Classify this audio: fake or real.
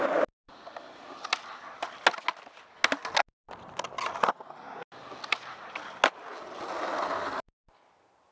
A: real